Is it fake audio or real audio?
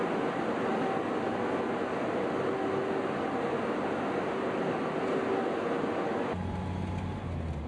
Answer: real